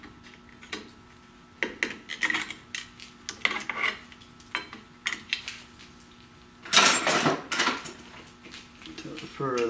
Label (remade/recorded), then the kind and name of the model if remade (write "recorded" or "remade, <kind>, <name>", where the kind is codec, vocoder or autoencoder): recorded